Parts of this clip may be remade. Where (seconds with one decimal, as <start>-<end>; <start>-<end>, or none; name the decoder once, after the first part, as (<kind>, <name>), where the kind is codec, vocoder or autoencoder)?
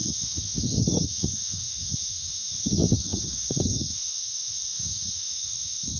0.0-6.0 (autoencoder, DAC-VAE)